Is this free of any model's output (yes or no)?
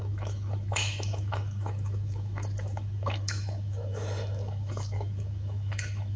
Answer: no